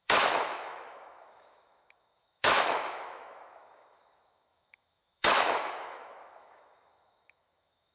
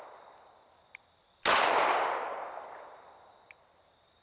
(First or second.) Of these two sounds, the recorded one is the second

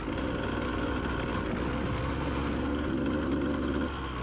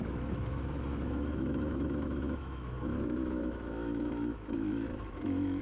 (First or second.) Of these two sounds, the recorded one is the first